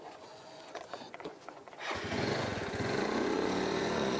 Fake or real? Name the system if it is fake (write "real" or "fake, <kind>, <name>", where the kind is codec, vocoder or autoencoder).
fake, vocoder, Vocos